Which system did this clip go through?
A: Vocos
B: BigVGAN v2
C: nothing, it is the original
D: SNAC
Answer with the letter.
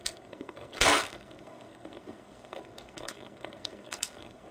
D